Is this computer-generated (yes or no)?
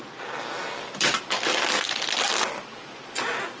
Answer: no